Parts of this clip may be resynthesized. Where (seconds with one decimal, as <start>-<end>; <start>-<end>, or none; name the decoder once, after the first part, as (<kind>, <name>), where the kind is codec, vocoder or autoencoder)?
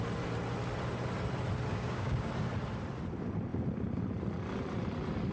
1.7-2.3 (codec, DAC)